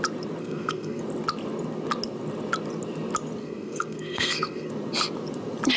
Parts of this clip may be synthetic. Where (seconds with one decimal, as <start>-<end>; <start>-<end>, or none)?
0.4-1.0; 3.4-4.7